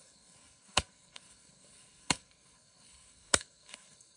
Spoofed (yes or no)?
yes